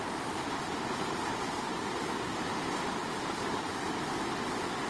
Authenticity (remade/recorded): recorded